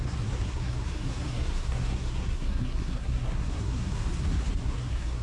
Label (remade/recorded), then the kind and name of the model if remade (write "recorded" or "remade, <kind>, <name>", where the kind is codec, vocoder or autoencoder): remade, codec, SNAC